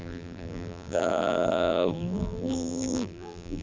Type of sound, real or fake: fake